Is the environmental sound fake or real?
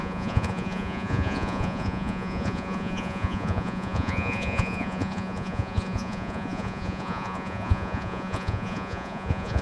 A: fake